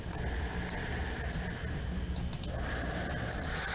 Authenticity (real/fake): real